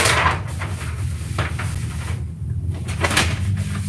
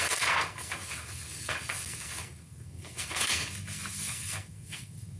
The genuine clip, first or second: first